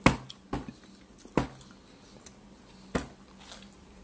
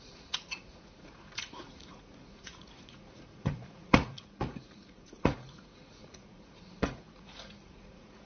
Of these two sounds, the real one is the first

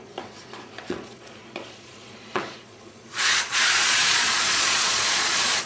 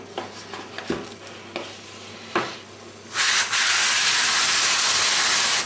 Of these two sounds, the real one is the second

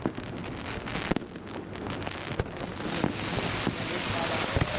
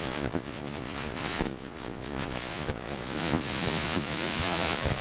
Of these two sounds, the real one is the first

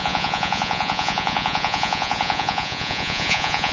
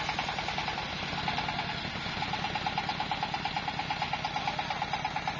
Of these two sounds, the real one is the second